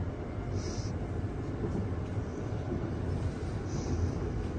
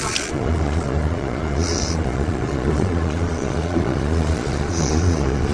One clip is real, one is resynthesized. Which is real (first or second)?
first